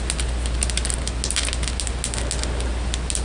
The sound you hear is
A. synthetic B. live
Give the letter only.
B